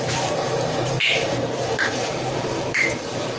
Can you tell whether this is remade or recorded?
remade